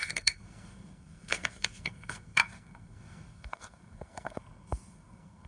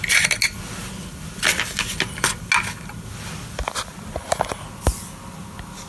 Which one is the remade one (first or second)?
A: first